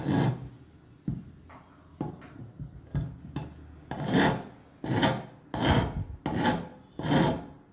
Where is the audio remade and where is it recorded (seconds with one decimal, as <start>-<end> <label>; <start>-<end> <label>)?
0.0-7.7 recorded